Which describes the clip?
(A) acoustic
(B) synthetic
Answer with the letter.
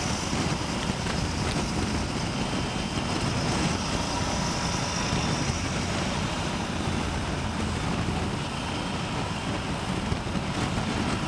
A